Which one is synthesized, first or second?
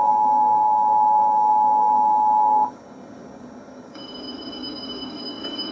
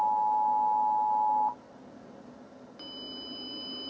first